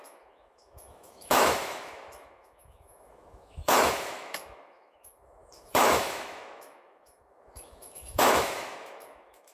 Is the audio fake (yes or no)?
yes